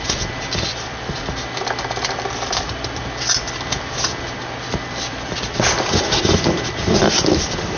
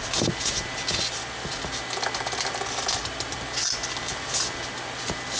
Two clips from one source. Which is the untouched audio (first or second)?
second